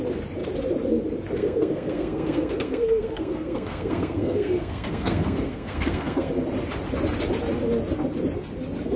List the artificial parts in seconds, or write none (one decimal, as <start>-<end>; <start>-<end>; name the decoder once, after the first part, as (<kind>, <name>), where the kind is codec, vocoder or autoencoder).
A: 1.4-6.3 (codec, SNAC)